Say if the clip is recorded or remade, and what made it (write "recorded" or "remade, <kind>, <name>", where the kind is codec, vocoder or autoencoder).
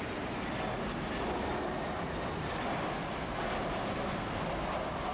recorded